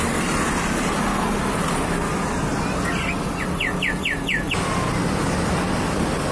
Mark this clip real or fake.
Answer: real